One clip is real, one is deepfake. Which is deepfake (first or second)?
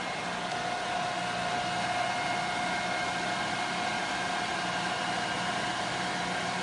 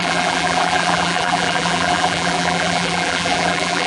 second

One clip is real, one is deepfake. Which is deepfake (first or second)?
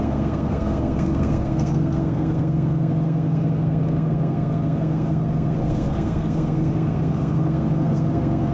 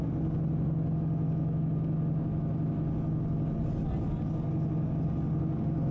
first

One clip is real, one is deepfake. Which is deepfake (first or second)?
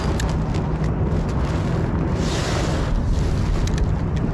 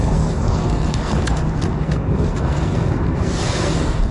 second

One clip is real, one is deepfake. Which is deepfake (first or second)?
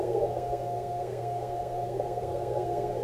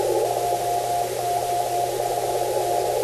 first